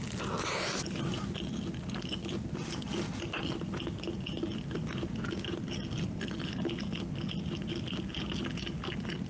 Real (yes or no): yes